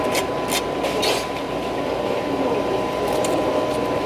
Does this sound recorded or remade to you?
recorded